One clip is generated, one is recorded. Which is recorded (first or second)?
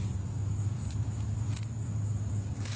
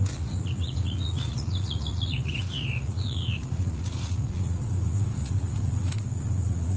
first